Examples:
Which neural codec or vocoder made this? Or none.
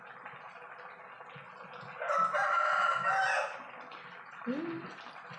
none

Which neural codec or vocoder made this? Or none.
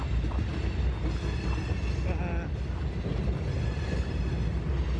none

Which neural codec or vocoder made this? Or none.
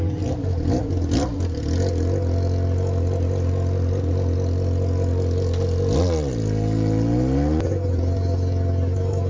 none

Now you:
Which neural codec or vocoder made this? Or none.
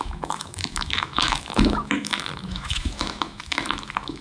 autoencoder, DAC-VAE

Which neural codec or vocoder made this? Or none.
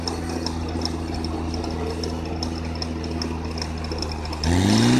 none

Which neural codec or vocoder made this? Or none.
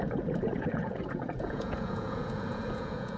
vocoder, Vocos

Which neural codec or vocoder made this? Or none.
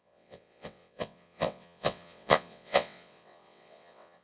vocoder, WaveNeXt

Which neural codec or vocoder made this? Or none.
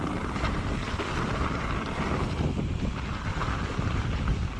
none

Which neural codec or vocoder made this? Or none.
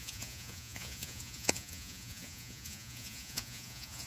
vocoder, Vocos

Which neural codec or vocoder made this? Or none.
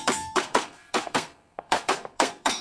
codec, SNAC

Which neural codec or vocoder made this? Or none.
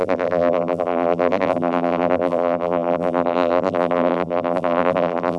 vocoder, BigVGAN v2